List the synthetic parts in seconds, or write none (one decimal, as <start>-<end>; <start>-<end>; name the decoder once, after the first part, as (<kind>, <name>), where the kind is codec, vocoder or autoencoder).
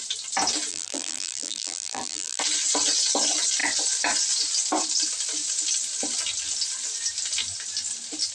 0.7-2.4 (vocoder, BigVGAN v2)